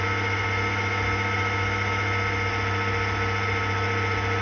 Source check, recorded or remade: recorded